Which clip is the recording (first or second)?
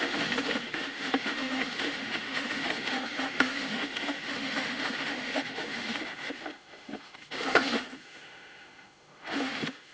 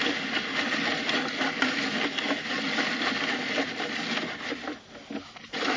second